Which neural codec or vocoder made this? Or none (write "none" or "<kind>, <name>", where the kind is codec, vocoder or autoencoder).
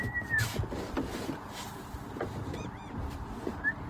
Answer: vocoder, BigVGAN v2